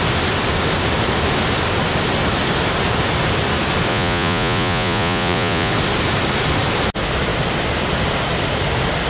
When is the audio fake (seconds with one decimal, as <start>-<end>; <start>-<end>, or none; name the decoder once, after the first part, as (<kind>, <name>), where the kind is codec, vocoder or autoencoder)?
3.9-5.7 (vocoder, Vocos)